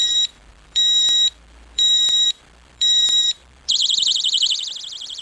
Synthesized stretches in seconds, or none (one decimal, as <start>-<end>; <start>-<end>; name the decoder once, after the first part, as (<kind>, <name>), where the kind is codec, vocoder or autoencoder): 0.0-3.8 (vocoder, BigVGAN v2); 4.8-5.2